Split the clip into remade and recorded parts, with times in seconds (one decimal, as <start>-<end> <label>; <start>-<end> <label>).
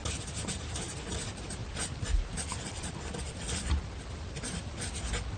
0.0-1.6 recorded; 1.6-3.6 remade; 3.6-5.4 recorded